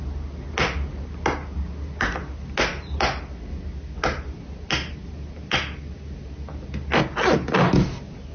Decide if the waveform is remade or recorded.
recorded